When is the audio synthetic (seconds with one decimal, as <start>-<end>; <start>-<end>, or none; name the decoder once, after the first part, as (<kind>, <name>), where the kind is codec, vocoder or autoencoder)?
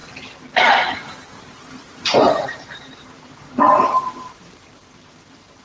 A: 1.4-5.6 (vocoder, BigVGAN v2)